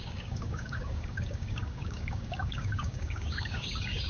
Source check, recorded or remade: remade